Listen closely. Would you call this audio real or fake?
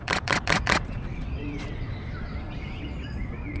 fake